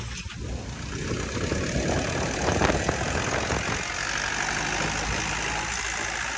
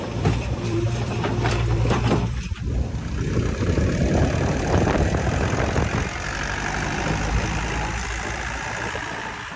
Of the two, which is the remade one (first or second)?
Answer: second